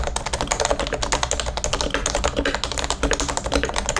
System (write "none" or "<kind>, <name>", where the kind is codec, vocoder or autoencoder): none